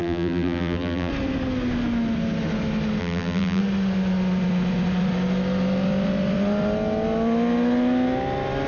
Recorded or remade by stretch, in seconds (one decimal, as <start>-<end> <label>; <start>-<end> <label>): 0.0-1.1 remade; 1.1-3.0 recorded; 3.0-3.6 remade; 3.6-8.7 recorded